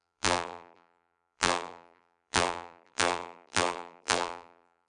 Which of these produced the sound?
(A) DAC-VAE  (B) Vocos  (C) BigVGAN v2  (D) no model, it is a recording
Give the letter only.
C